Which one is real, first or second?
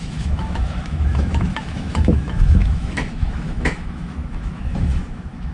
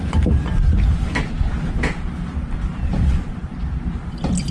second